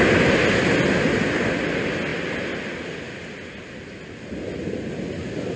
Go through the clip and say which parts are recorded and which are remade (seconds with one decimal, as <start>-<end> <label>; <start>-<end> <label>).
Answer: 0.0-5.6 recorded